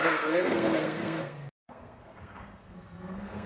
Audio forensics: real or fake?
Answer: fake